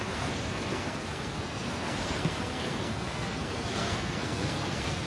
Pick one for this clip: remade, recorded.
remade